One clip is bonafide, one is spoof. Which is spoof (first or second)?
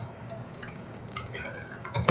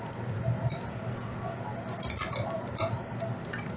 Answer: first